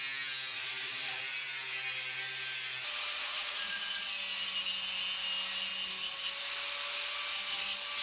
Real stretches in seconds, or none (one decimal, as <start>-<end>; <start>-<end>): 0.0-0.5; 1.2-3.2; 4.1-8.0